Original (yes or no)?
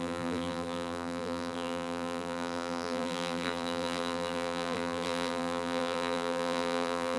no